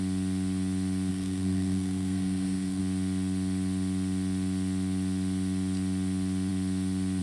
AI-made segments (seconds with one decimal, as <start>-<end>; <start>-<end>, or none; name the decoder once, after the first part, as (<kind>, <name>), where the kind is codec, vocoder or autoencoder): 1.1-2.8 (codec, SNAC)